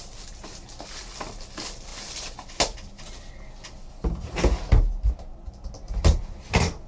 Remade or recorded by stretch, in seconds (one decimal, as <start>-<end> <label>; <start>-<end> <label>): 0.0-6.9 recorded